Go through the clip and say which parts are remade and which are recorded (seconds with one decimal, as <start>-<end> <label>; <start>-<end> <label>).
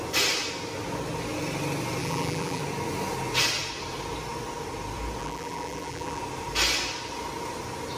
0.0-2.0 recorded; 2.0-2.6 remade; 2.6-5.2 recorded; 5.2-6.2 remade; 6.2-8.0 recorded